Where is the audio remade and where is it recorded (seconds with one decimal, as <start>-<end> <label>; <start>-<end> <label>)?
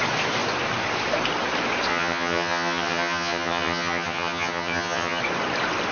0.0-1.9 recorded; 1.9-5.2 remade; 5.2-5.9 recorded